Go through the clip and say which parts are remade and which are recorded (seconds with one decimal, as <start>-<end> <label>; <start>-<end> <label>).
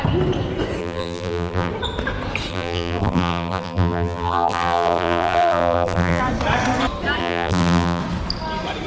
0.0-0.8 recorded; 0.8-1.7 remade; 1.7-2.5 recorded; 2.5-6.2 remade; 6.2-7.2 recorded; 7.2-8.0 remade; 8.0-8.9 recorded